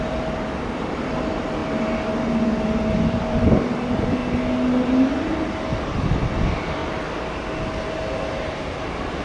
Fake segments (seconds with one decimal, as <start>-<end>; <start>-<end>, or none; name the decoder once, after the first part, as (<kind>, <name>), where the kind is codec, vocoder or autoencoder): 0.0-1.6 (vocoder, BigVGAN v2); 2.9-4.2; 5.1-6.8; 8.7-9.2